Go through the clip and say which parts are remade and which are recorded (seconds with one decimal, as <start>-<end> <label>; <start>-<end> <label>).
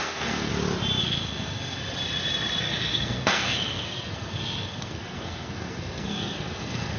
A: 0.0-0.5 remade; 0.5-1.0 recorded; 1.0-1.8 remade; 1.8-2.6 recorded; 2.6-7.0 remade